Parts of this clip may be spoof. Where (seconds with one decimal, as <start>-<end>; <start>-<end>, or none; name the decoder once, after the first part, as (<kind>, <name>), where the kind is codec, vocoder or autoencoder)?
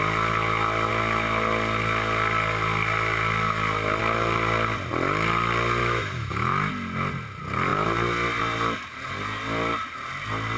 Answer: 5.8-6.7 (autoencoder, DAC-VAE)